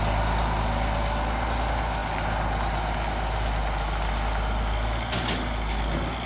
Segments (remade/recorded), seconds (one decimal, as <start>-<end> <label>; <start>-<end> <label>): 0.0-6.3 recorded